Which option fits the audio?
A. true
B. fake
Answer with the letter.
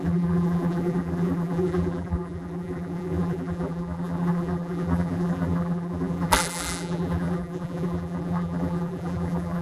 B